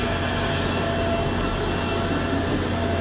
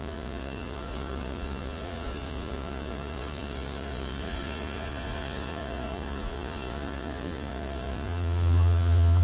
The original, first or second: first